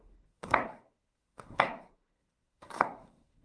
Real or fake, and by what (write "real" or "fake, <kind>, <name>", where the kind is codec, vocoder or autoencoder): fake, codec, SNAC